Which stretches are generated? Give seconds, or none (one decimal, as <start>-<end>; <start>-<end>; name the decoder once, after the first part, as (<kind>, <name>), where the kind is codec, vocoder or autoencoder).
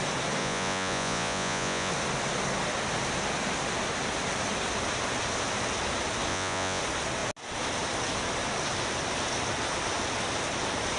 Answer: 0.4-1.9 (vocoder, Vocos); 6.3-6.8